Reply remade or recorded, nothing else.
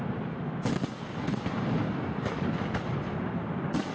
recorded